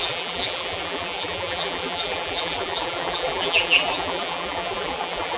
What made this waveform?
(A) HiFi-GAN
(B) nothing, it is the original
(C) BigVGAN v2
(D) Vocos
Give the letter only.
C